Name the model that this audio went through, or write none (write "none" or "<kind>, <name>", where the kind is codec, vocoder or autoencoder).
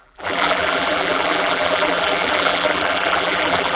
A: vocoder, BigVGAN v2